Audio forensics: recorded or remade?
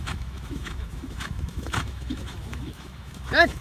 remade